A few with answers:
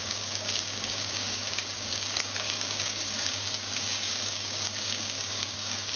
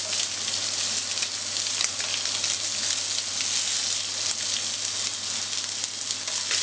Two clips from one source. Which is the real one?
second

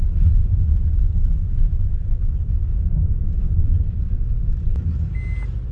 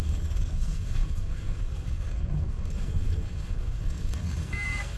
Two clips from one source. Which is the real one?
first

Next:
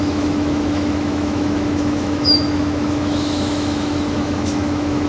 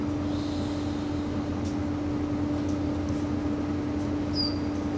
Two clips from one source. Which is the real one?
second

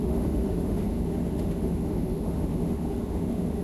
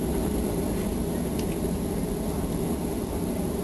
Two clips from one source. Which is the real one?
second